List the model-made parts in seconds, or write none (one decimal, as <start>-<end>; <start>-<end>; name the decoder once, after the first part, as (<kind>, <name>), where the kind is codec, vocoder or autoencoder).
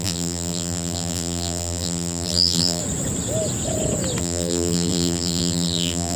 0.0-2.8 (vocoder, BigVGAN v2); 4.2-6.2